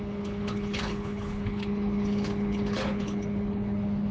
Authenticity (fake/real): fake